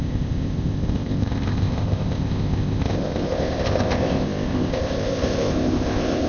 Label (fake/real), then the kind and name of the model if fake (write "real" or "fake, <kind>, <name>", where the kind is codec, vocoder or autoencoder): fake, codec, ZipCodec